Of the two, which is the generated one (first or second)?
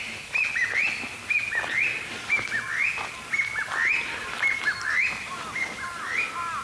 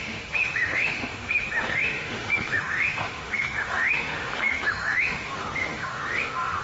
second